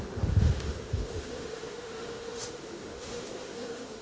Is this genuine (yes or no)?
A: no